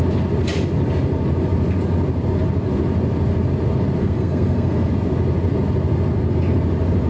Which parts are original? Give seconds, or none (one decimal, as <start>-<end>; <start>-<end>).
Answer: 0.0-4.0; 4.9-7.1